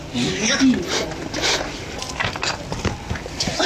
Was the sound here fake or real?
real